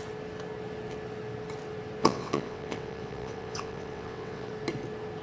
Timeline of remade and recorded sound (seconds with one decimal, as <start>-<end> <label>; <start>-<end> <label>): 0.0-2.0 recorded; 2.0-4.5 remade; 4.5-5.2 recorded